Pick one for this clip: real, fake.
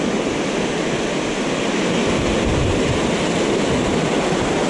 real